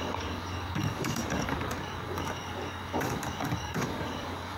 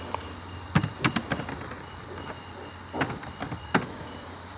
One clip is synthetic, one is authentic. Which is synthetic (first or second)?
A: first